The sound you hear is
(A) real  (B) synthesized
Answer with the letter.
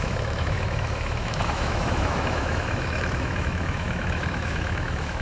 B